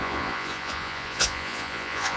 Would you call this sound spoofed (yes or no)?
yes